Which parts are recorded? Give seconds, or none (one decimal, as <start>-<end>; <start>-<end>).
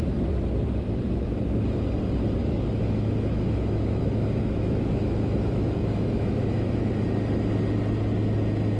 0.0-2.4; 6.9-8.8